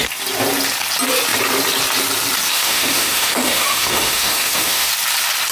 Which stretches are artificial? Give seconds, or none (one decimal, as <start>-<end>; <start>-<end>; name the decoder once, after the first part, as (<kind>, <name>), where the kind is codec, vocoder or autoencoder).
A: 2.5-4.9 (autoencoder, DAC-VAE)

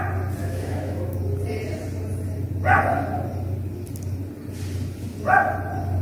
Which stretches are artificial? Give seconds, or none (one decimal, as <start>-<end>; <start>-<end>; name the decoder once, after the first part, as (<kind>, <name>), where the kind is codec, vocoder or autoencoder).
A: 0.4-1.2 (autoencoder, DAC-VAE)

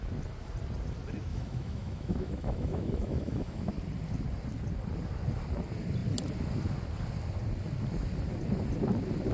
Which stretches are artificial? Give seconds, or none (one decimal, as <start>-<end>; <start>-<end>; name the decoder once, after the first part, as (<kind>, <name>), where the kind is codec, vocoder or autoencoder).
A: 1.3-3.7 (autoencoder, DAC-VAE)

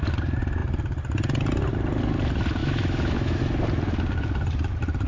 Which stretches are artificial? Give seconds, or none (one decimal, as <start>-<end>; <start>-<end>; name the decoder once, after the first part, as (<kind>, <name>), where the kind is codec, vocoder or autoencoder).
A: 2.6-3.4 (autoencoder, DAC-VAE)

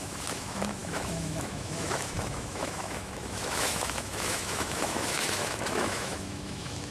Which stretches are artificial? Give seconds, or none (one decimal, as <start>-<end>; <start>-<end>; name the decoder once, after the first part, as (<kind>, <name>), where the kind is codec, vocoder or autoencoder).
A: 0.0-6.9 (autoencoder, DAC-VAE)

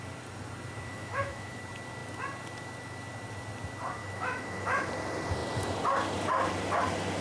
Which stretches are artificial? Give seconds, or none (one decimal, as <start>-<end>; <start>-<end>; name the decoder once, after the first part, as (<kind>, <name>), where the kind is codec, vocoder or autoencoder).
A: 0.9-1.6 (autoencoder, DAC-VAE); 4.0-4.9